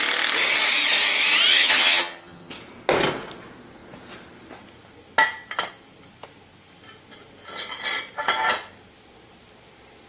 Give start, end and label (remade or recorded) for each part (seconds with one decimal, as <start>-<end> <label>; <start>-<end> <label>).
0.0-1.5 recorded; 1.5-2.5 remade; 2.5-10.1 recorded